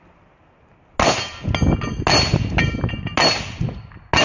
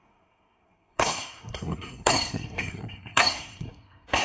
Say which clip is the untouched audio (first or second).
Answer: first